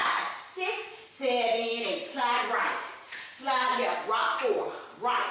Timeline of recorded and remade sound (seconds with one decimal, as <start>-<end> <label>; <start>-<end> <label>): 0.0-3.0 recorded; 3.0-3.4 remade; 3.4-5.3 recorded